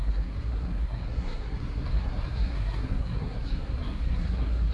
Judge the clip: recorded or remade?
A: remade